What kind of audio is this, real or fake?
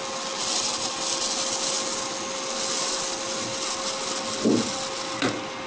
real